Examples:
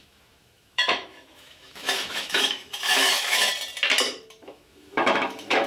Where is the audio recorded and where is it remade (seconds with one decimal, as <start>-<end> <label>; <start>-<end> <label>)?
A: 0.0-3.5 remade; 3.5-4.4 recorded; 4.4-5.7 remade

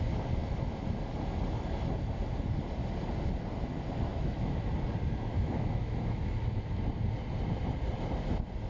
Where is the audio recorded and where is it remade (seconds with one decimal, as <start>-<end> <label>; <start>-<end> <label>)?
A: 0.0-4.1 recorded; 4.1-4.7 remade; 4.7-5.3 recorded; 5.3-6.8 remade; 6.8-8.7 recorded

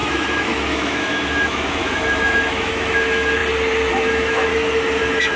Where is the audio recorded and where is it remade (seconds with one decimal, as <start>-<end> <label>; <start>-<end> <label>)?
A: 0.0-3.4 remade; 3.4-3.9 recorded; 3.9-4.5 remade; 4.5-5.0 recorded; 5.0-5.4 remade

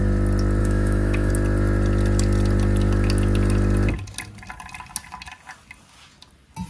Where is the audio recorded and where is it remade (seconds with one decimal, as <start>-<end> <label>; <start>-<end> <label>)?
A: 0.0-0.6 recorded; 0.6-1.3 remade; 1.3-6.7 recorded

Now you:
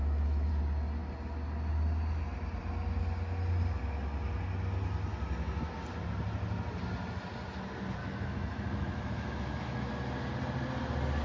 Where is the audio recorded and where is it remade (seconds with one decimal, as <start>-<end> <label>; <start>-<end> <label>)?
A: 0.0-0.5 remade; 0.5-8.0 recorded; 8.0-9.9 remade; 9.9-11.2 recorded

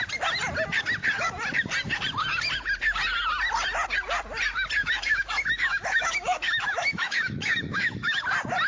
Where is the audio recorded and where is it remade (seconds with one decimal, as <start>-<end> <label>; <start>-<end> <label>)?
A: 0.0-4.8 recorded; 4.8-8.2 remade; 8.2-8.7 recorded